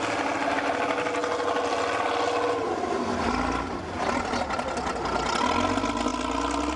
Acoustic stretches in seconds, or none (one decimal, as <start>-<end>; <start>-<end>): 0.0-6.8